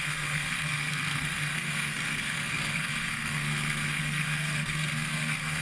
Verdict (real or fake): fake